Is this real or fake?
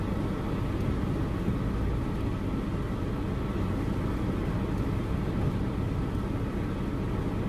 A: real